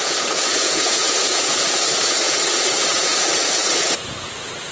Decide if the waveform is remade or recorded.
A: remade